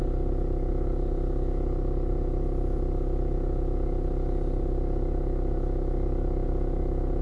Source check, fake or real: real